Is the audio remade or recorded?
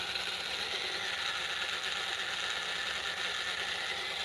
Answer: recorded